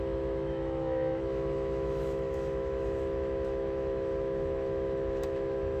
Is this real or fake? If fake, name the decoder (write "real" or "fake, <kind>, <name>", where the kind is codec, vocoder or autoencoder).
fake, autoencoder, DAC-VAE